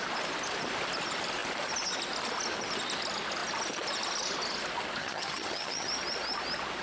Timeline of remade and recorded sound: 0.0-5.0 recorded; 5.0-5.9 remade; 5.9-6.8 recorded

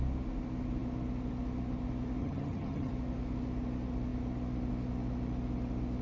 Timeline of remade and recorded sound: 0.0-2.2 recorded; 2.2-2.9 remade; 2.9-6.0 recorded